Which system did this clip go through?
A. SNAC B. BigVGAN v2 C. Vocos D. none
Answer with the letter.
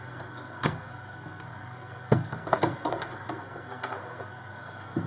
A